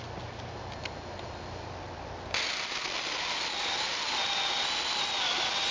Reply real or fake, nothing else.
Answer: real